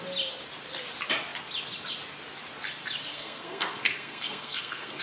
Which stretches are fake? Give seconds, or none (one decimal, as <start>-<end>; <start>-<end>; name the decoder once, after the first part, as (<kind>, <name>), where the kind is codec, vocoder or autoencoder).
3.1-5.0 (codec, SNAC)